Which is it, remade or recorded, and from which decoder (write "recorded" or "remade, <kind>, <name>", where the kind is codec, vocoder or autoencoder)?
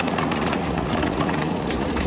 remade, vocoder, Vocos